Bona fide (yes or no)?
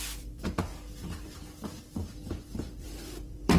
no